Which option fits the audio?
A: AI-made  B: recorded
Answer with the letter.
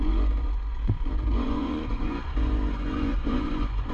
A